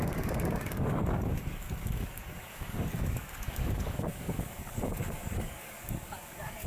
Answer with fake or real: fake